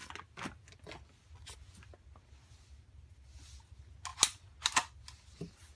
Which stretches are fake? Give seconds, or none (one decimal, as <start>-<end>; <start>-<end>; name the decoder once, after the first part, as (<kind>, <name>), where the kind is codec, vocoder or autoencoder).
none

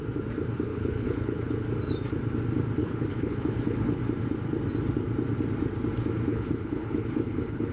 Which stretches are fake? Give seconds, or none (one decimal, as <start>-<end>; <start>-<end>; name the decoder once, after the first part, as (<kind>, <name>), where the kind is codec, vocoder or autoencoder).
0.7-1.7 (codec, HILCodec); 2.8-4.0; 6.3-7.7

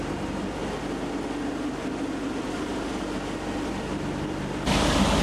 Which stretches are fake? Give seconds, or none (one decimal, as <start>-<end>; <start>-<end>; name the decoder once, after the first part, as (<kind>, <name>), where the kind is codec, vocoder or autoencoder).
0.0-0.6 (vocoder, BigVGAN v2); 3.7-5.2

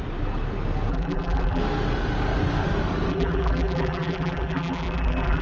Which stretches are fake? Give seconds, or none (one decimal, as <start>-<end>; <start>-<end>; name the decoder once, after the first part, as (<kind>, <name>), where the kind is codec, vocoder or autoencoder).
0.9-1.6 (vocoder, BigVGAN v2); 3.1-5.4

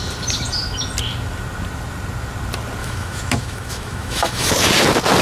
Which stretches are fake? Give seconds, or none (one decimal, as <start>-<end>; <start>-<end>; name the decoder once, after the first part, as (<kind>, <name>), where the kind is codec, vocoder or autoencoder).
2.8-4.5 (autoencoder, DAC-VAE)

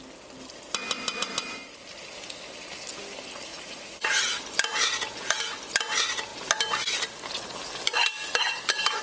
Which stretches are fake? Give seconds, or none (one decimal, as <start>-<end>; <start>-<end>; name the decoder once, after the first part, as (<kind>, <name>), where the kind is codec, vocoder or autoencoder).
3.5-4.4 (vocoder, Vocos)

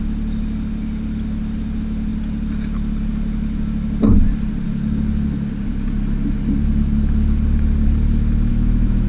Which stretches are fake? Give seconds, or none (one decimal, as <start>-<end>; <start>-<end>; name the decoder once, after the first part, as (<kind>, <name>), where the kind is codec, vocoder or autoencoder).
8.5-9.1 (autoencoder, DAC-VAE)

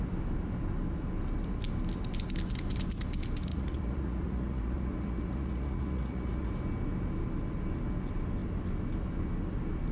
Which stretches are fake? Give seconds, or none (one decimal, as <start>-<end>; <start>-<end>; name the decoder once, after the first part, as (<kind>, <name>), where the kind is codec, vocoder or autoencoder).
3.5-6.5 (vocoder, Vocos)